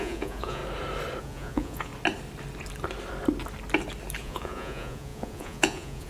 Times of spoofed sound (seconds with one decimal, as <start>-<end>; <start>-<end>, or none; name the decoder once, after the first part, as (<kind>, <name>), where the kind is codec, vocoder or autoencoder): 0.0-0.6 (vocoder, Vocos); 1.2-1.9; 4.2-6.1